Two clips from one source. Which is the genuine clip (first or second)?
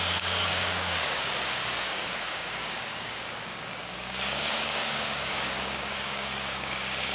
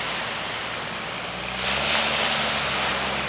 second